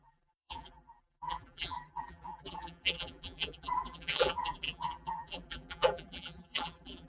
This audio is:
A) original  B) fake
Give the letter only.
B